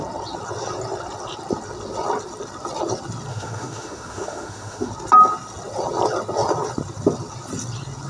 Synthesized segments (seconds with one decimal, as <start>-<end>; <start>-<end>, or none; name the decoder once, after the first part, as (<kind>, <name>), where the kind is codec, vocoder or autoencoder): 3.3-4.9 (autoencoder, DAC-VAE)